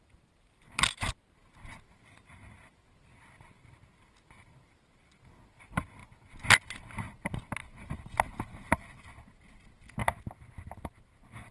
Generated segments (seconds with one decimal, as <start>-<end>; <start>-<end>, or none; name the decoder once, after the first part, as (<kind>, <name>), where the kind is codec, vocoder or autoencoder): none